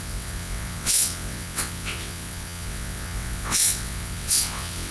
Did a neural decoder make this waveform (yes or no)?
yes